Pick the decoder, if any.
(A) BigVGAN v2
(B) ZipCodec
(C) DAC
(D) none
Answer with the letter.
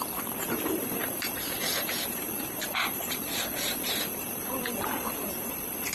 A